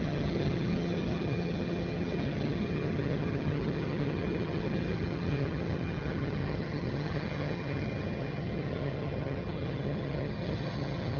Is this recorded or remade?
remade